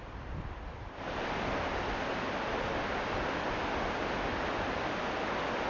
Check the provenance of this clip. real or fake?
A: real